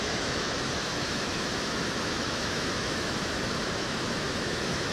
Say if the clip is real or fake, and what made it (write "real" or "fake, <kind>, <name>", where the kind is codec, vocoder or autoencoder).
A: fake, autoencoder, DAC-VAE